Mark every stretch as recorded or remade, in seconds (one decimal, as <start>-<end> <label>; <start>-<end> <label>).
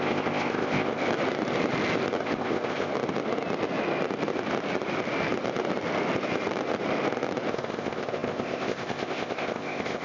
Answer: 0.0-1.0 remade; 1.0-2.2 recorded; 2.2-2.9 remade; 2.9-7.5 recorded; 7.5-10.0 remade